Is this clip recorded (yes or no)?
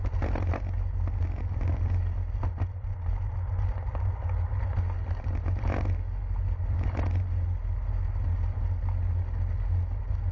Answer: yes